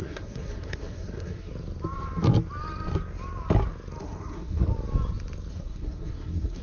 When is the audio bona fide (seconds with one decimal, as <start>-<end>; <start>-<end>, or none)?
1.5-4.0; 4.7-5.5